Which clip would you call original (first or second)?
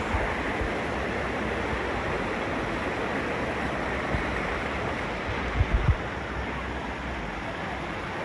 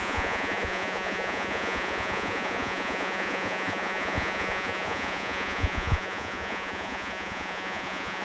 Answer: first